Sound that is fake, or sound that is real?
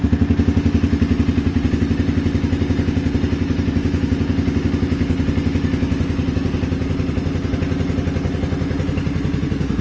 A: real